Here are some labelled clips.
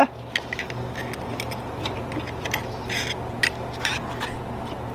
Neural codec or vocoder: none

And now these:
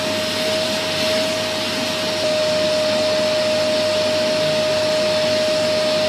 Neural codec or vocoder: none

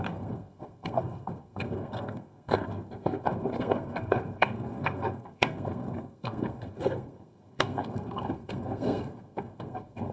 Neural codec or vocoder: codec, SNAC